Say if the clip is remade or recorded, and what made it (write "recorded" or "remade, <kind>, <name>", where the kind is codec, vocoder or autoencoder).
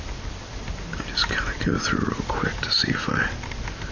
recorded